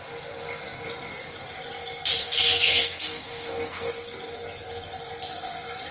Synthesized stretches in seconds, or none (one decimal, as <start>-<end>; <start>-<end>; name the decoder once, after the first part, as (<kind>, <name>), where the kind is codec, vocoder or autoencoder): 2.2-3.9 (codec, SNAC)